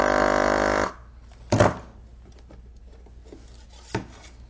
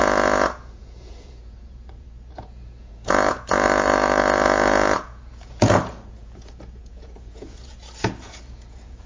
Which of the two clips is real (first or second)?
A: first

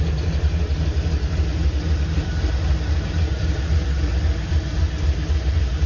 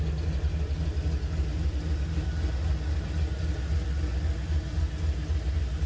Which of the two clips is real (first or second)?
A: second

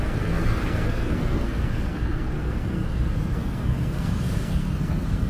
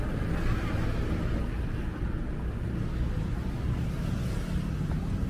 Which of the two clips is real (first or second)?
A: second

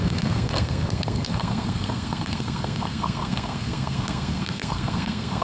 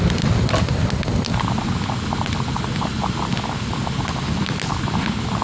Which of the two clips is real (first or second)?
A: second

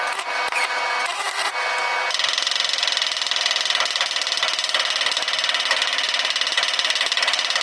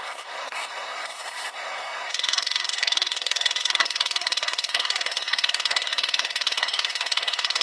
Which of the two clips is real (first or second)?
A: first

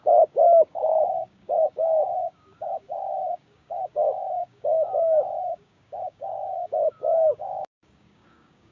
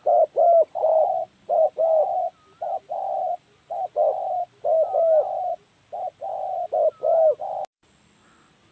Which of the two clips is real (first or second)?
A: second